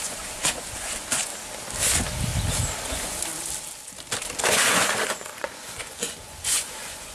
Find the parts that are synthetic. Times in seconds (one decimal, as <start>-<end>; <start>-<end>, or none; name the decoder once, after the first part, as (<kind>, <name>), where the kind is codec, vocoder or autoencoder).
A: 0.0-1.3 (vocoder, Vocos); 2.8-3.3; 4.5-7.1